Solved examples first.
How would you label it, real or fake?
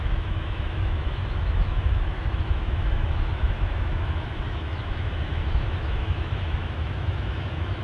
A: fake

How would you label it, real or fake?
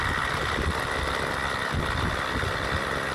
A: real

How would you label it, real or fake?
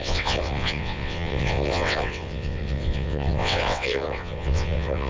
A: fake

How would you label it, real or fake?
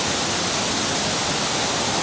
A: real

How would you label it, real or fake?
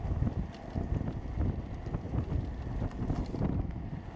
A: real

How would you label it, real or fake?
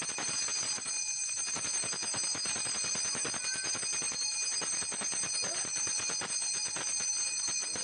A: real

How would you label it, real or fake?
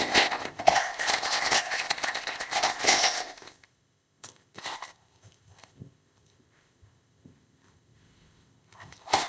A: fake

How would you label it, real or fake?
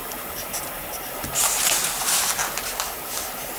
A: real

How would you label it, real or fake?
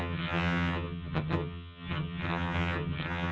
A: fake